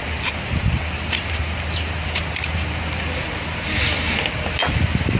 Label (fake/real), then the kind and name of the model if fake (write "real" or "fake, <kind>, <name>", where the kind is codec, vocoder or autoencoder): real